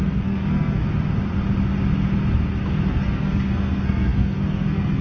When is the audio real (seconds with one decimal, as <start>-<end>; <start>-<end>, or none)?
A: 0.8-2.9